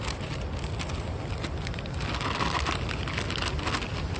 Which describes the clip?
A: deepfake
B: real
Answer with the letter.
B